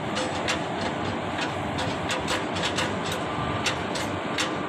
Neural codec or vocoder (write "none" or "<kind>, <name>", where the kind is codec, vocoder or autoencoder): none